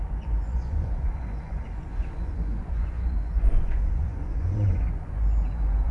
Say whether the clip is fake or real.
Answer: fake